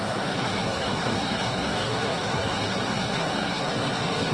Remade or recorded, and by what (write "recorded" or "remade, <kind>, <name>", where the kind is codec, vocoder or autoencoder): remade, codec, SNAC